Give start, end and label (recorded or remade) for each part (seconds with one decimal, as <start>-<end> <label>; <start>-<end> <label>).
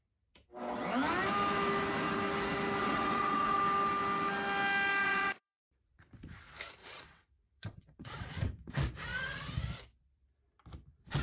0.0-2.8 recorded; 2.8-3.6 remade; 3.6-5.0 recorded; 5.0-5.6 remade; 5.6-6.8 recorded; 6.8-8.8 remade; 8.8-11.2 recorded